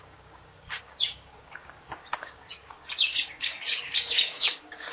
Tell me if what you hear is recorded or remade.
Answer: remade